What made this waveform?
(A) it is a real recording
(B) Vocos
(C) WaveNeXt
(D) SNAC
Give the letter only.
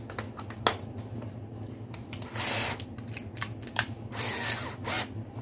A